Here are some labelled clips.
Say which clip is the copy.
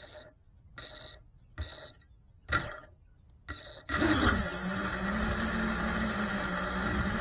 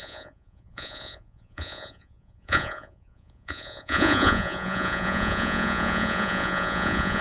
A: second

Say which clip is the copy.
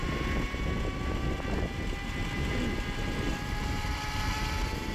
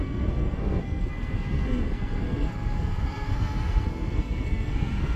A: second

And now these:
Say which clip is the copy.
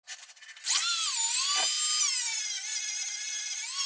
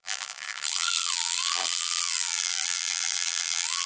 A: second